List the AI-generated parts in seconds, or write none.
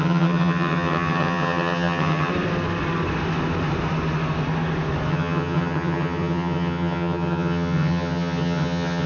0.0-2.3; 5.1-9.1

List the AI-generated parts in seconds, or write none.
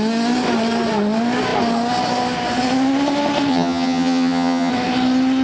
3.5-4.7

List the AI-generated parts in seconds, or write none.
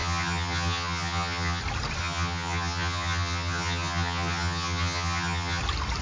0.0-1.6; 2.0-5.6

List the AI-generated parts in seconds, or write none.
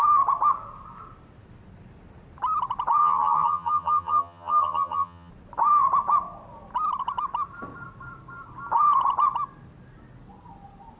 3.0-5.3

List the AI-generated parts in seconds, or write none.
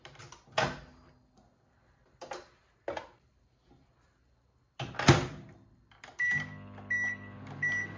none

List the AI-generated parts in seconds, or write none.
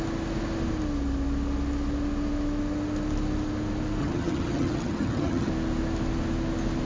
4.0-5.5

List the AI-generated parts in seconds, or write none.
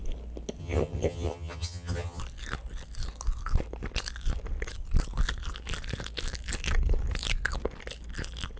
0.6-2.2